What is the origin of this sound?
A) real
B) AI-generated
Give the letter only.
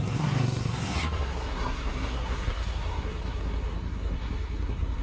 B